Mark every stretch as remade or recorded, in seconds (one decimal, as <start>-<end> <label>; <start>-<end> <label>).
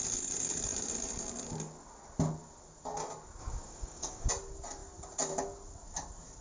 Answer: 0.0-3.4 recorded; 3.4-4.3 remade; 4.3-6.4 recorded